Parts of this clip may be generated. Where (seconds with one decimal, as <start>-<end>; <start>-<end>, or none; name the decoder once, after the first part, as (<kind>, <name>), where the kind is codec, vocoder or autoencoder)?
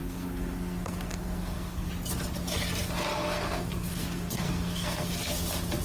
0.0-1.9 (codec, SNAC); 3.1-5.3